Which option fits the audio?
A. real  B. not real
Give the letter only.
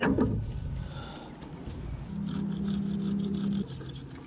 A